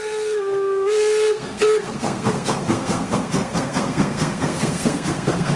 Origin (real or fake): fake